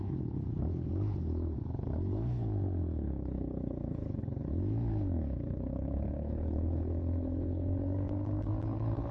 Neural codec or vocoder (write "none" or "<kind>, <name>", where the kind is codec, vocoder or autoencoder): codec, HILCodec